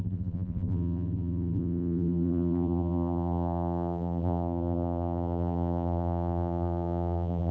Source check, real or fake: fake